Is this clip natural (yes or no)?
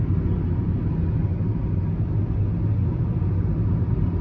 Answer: yes